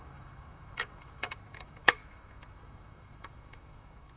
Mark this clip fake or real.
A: fake